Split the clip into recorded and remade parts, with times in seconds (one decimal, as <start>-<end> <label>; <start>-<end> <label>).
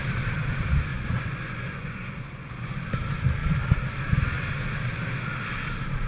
0.0-0.9 recorded; 0.9-2.8 remade; 2.8-6.1 recorded